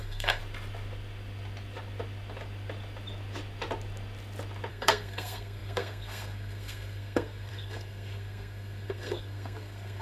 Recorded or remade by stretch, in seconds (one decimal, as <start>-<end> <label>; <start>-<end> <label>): 0.0-0.4 remade; 0.4-4.7 recorded; 4.7-10.0 remade